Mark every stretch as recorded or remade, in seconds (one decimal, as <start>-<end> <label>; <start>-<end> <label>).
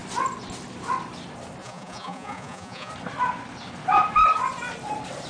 0.0-1.6 recorded; 1.6-2.9 remade; 2.9-5.3 recorded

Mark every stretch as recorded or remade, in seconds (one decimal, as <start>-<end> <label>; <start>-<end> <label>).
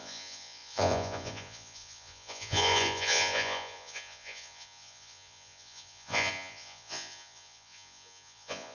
0.0-8.7 remade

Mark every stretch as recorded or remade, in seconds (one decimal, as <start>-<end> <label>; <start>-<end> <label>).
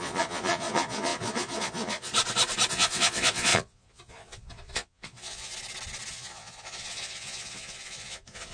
0.0-2.1 remade; 2.1-2.7 recorded; 2.7-5.5 remade; 5.5-6.1 recorded; 6.1-8.5 remade